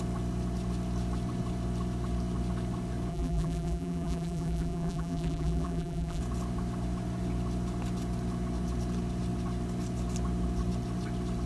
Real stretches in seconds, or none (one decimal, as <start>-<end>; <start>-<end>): 0.0-3.1; 6.2-11.5